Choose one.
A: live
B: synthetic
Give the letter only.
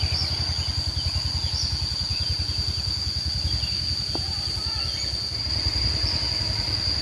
A